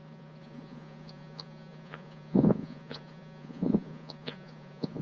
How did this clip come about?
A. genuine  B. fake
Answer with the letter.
B